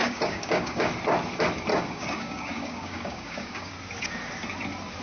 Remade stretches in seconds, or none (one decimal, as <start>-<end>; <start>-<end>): 0.0-0.9; 1.7-3.7